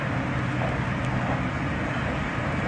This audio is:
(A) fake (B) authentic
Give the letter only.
B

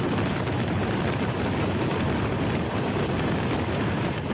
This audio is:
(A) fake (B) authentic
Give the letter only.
B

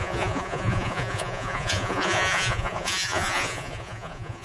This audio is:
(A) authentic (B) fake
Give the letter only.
B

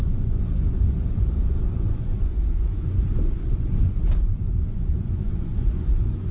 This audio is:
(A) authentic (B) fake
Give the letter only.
B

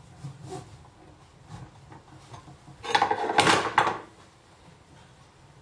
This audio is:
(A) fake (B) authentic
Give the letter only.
B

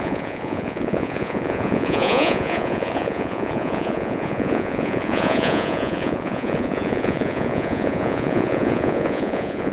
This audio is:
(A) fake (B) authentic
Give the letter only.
A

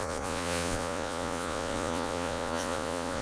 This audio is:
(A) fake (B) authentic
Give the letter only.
A